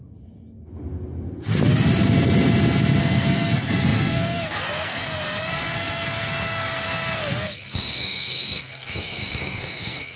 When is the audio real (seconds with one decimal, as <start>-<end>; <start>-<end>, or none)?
0.0-3.0